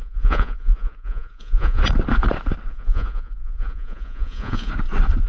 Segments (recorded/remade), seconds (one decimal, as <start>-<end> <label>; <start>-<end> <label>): 0.0-1.8 remade; 1.8-2.7 recorded; 2.7-4.7 remade; 4.7-5.3 recorded

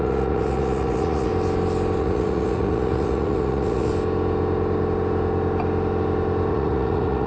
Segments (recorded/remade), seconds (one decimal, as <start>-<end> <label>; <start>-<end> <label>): 0.0-1.3 remade; 1.3-2.0 recorded; 2.0-3.9 remade; 3.9-6.5 recorded; 6.5-7.3 remade

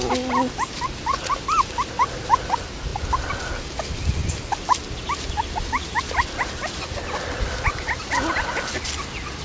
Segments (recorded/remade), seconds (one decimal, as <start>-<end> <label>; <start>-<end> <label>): 0.0-9.4 recorded

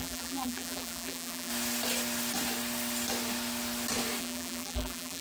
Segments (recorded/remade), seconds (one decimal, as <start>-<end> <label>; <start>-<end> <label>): 0.0-1.5 remade; 1.5-4.2 recorded; 4.2-5.2 remade

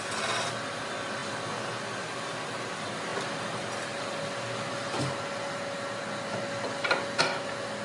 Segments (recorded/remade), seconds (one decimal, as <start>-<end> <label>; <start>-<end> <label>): 0.0-7.8 recorded

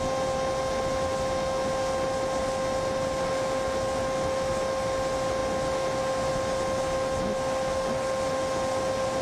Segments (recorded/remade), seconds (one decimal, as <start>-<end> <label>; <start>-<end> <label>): 0.0-9.2 recorded